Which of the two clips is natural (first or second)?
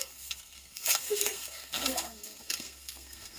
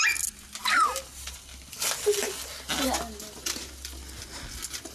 second